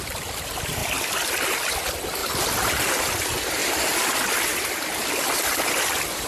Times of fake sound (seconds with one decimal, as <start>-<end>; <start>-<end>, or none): 3.6-4.3